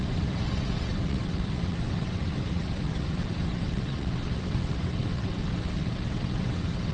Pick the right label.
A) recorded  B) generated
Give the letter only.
B